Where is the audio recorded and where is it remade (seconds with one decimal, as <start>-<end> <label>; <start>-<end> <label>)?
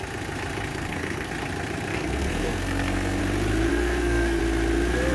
0.0-0.7 recorded; 0.7-1.3 remade; 1.3-1.9 recorded; 1.9-3.2 remade; 3.2-3.7 recorded; 3.7-4.4 remade; 4.4-5.1 recorded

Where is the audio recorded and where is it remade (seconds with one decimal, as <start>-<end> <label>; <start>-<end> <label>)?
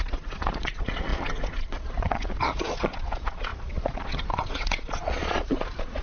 0.0-6.0 remade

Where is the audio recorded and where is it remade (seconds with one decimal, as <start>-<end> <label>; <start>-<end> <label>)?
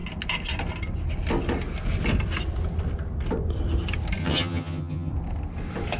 0.0-4.2 recorded; 4.2-5.1 remade; 5.1-6.0 recorded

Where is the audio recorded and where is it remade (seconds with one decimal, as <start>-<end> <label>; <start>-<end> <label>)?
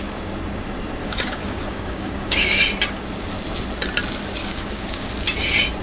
0.0-1.0 recorded; 1.0-2.6 remade; 2.6-4.4 recorded; 4.4-5.1 remade; 5.1-5.8 recorded